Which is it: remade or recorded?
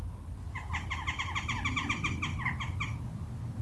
recorded